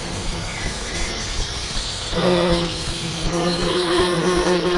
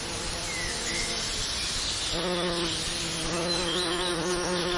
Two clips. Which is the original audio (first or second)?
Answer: second